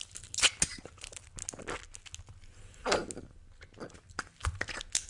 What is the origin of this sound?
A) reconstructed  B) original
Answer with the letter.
B